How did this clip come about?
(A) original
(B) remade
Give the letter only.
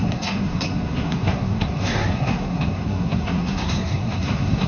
B